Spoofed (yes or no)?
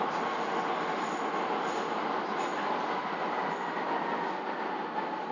no